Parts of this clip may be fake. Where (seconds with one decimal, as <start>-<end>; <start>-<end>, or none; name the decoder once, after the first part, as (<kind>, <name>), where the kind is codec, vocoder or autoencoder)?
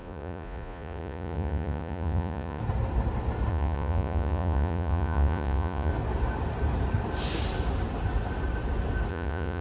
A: 0.0-2.6 (vocoder, Vocos); 3.5-5.9; 9.1-9.6